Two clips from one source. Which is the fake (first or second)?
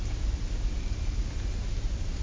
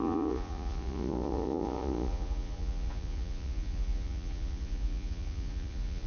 second